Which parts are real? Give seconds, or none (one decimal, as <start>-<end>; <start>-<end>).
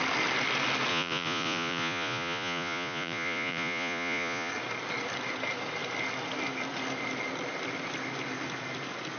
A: 0.0-0.9; 4.5-9.2